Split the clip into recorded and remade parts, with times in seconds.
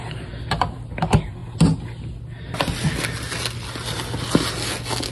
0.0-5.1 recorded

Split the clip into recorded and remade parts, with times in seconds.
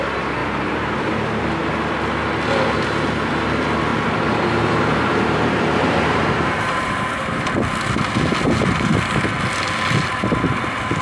0.0-0.4 recorded; 0.4-1.1 remade; 1.1-3.9 recorded; 3.9-7.5 remade; 7.5-11.0 recorded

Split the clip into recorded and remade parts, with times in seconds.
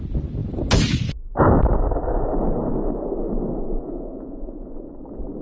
0.0-3.8 recorded; 3.8-4.7 remade; 4.7-5.4 recorded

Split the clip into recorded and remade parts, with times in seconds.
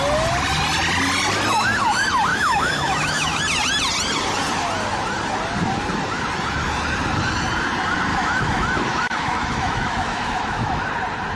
0.0-2.3 recorded; 2.3-3.4 remade; 3.4-8.1 recorded; 8.1-10.8 remade; 10.8-11.4 recorded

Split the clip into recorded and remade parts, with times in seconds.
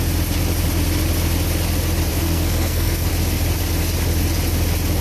0.0-2.1 recorded; 2.1-3.1 remade; 3.1-5.0 recorded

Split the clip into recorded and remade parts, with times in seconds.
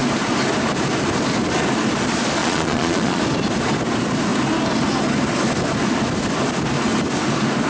0.0-2.4 recorded; 2.4-3.2 remade; 3.2-7.7 recorded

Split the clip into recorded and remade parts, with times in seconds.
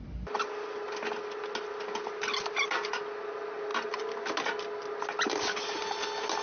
0.0-6.4 recorded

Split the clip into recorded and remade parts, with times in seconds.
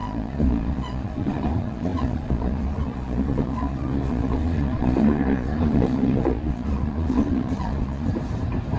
0.0-8.1 remade; 8.1-8.8 recorded